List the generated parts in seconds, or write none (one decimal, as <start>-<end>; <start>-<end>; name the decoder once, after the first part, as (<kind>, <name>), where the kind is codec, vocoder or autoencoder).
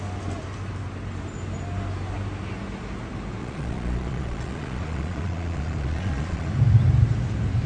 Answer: 3.4-6.5 (vocoder, Vocos)